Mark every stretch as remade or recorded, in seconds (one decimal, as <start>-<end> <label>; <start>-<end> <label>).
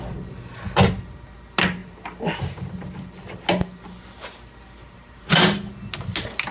0.0-4.8 recorded; 4.8-5.4 remade; 5.4-6.5 recorded